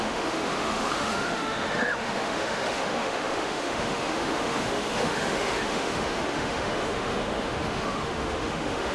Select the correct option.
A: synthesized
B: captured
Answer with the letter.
A